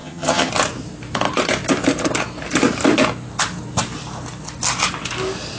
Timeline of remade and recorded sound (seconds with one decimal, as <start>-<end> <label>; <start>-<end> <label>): 0.0-0.5 remade; 0.5-5.6 recorded